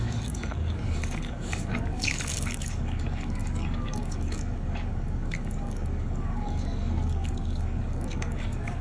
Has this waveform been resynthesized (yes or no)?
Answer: yes